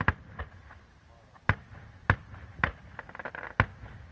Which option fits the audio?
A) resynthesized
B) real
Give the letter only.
B